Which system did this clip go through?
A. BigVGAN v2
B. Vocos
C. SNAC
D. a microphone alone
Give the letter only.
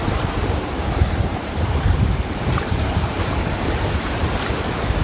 A